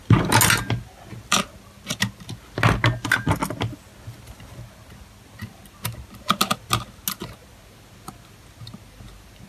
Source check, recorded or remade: recorded